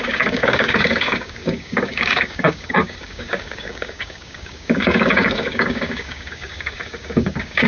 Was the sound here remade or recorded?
remade